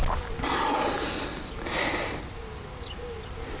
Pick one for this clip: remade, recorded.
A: recorded